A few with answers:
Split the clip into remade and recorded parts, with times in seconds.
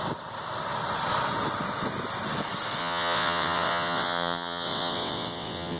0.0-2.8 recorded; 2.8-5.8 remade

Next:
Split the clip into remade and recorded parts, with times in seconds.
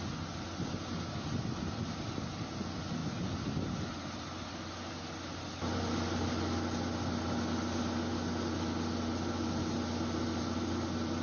0.0-11.2 recorded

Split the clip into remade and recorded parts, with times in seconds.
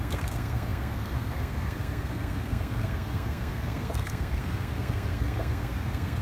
0.0-6.2 remade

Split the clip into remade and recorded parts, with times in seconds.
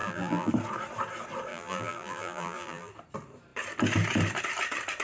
0.0-0.5 remade; 0.5-1.5 recorded; 1.5-2.9 remade; 2.9-5.0 recorded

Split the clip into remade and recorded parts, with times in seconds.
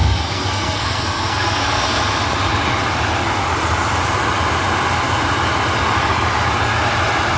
0.0-2.0 remade; 2.0-7.4 recorded